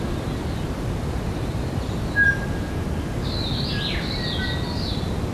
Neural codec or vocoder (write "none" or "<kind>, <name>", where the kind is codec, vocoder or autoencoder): none